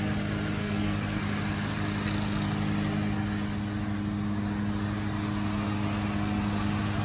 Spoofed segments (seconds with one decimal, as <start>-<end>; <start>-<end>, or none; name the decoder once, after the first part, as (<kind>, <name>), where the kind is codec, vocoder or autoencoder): 0.6-1.2 (codec, SNAC)